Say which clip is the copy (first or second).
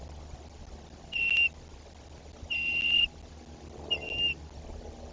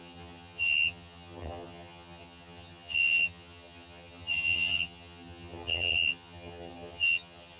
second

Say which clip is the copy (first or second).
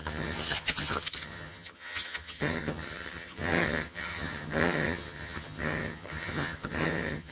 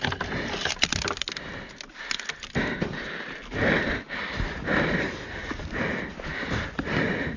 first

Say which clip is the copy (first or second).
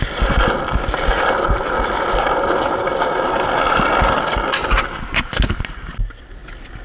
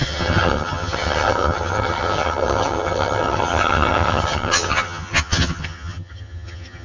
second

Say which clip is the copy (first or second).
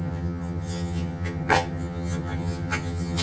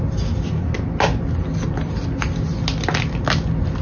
first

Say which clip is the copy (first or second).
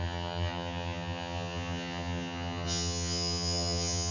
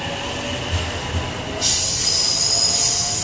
first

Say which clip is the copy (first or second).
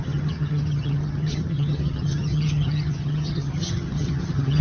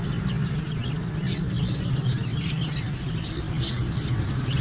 first